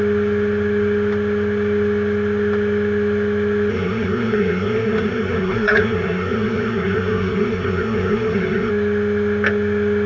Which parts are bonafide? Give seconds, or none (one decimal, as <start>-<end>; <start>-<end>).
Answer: 0.0-3.7; 8.7-10.1